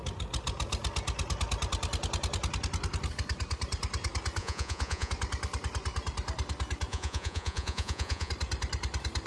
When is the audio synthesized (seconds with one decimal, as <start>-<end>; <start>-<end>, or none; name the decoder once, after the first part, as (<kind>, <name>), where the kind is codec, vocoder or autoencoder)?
4.4-5.1 (vocoder, Vocos); 6.9-8.3